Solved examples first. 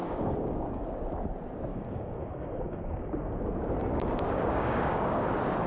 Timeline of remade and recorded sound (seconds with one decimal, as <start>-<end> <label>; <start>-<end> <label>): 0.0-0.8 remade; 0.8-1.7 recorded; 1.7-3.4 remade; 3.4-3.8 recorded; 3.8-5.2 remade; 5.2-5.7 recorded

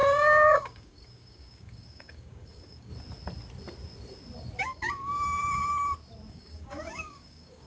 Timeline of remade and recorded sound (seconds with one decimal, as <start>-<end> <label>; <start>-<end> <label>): 0.0-2.9 remade; 2.9-4.6 recorded; 4.6-5.6 remade; 5.6-6.3 recorded; 6.3-7.7 remade

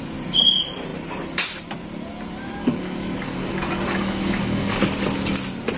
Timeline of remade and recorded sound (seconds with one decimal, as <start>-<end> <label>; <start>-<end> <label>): 0.0-2.6 recorded; 2.6-4.8 remade; 4.8-5.8 recorded